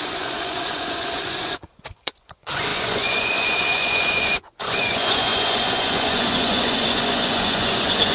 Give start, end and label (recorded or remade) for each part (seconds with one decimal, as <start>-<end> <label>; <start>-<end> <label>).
0.0-8.1 remade